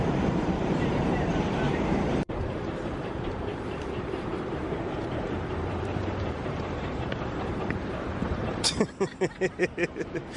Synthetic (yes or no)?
yes